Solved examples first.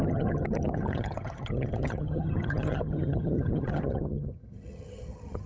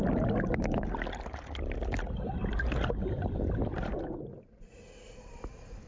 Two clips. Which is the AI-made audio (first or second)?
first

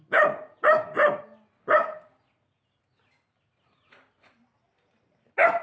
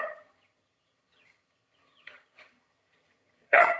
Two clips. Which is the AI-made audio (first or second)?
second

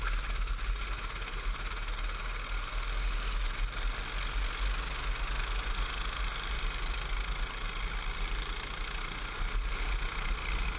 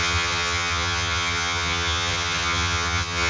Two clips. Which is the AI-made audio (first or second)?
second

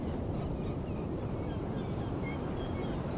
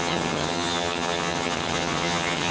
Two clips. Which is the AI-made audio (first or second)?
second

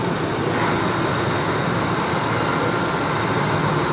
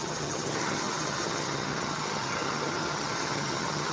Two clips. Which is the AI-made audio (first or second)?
second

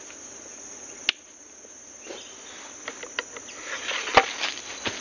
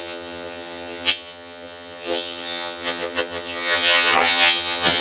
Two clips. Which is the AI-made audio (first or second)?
second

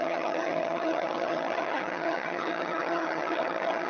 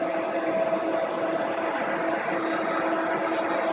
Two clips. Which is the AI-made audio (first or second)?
first